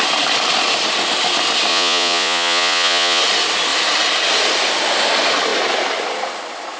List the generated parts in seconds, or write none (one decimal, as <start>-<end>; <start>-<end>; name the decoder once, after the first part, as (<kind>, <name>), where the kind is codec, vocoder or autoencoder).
1.7-3.2 (vocoder, Vocos)

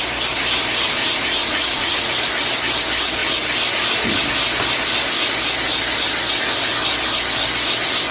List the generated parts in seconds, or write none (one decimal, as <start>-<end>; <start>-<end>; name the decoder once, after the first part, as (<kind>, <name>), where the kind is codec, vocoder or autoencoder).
1.4-2.1 (vocoder, Vocos)